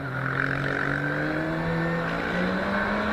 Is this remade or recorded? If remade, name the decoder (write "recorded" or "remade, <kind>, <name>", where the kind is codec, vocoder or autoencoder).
recorded